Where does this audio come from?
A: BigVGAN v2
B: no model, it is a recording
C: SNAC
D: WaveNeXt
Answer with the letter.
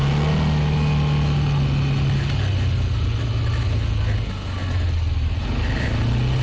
B